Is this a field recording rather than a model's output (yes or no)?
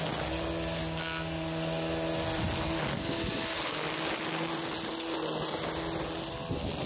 yes